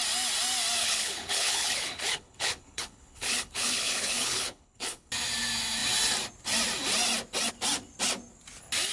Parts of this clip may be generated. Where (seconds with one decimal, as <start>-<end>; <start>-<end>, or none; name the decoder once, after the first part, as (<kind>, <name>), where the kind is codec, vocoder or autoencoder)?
0.8-5.1 (codec, HILCodec)